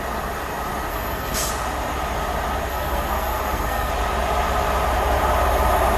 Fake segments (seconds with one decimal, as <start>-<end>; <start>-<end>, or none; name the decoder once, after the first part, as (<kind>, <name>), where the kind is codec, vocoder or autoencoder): 0.9-1.5 (codec, SNAC); 2.7-3.9